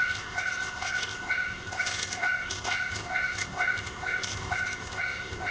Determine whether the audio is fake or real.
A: fake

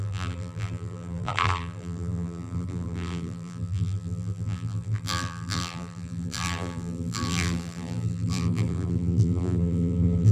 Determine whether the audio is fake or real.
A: fake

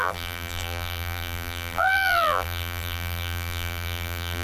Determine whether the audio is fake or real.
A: fake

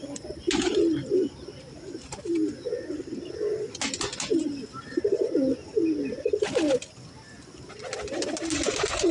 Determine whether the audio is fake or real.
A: real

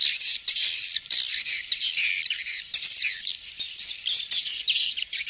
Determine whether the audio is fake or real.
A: fake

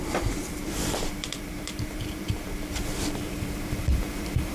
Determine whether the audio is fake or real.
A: fake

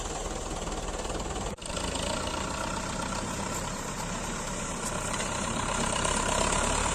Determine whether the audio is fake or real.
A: fake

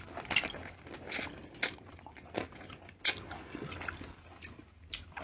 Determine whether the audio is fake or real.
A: real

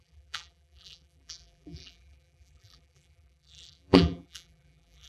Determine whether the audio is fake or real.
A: fake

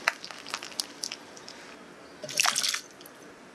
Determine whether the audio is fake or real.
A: real